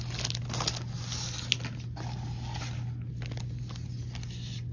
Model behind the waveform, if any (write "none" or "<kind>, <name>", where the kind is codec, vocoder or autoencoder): none